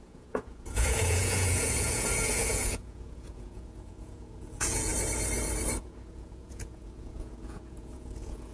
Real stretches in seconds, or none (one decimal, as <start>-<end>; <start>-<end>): 4.9-5.8